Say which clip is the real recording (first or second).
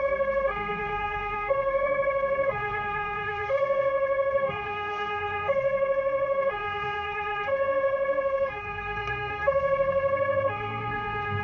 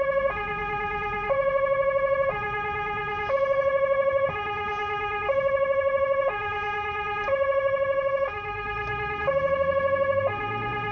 second